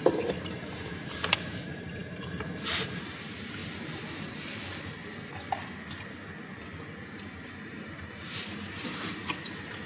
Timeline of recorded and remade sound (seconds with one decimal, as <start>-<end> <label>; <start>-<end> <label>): 0.0-3.6 remade; 3.6-6.8 recorded; 6.8-9.9 remade

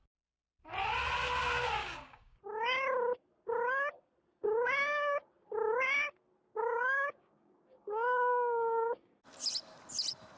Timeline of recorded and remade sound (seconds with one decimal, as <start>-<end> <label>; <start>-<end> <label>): 0.0-1.8 recorded; 1.8-2.4 remade; 2.4-4.6 recorded; 4.6-5.3 remade; 5.3-6.5 recorded; 6.5-9.2 remade; 9.2-10.4 recorded

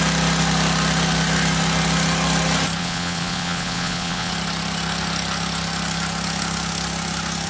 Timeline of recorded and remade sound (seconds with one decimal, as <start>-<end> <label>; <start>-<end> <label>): 0.0-2.8 recorded; 2.8-4.3 remade; 4.3-7.5 recorded

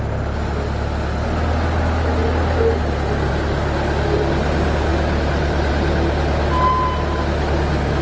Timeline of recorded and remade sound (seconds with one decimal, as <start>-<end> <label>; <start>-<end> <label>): 0.0-8.0 recorded

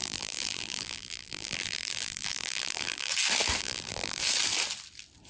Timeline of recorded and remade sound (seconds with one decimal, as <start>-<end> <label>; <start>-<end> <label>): 0.0-3.1 remade; 3.1-3.6 recorded; 3.6-4.2 remade; 4.2-5.3 recorded

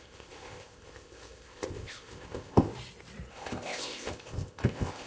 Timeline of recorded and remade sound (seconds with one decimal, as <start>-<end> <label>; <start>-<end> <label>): 0.0-2.7 remade; 2.7-3.3 recorded; 3.3-5.1 remade

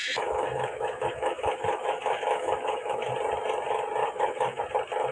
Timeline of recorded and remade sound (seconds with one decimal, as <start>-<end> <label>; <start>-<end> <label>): 0.0-3.1 remade; 3.1-4.0 recorded; 4.0-4.6 remade; 4.6-5.1 recorded

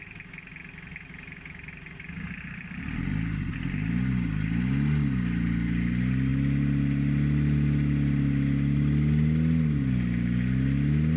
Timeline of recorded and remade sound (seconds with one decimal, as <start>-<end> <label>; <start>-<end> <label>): 0.0-11.2 recorded